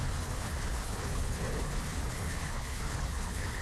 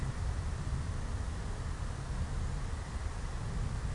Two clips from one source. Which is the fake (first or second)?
first